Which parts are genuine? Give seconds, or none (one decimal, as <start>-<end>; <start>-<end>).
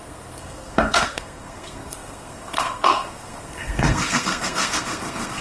none